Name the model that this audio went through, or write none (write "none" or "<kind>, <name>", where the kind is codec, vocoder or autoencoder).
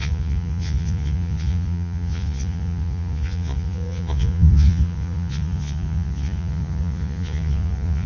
vocoder, Vocos